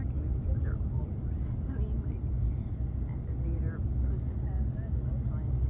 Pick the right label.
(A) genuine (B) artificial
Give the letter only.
A